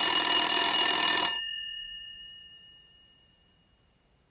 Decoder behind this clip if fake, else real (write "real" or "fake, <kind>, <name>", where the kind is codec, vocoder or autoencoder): fake, vocoder, BigVGAN v2